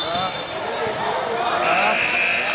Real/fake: real